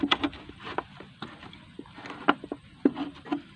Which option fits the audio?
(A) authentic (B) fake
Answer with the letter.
A